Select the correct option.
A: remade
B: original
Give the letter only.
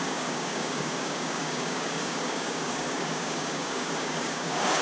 A